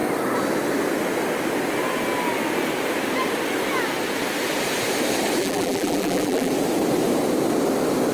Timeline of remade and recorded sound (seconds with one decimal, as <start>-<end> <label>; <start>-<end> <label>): 0.0-5.4 recorded; 5.4-6.5 remade; 6.5-8.1 recorded